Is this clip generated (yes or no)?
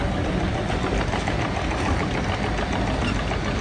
no